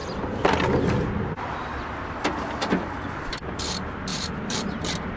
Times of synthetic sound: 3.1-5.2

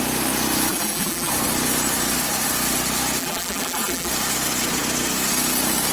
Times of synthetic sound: 0.7-1.3; 3.2-4.1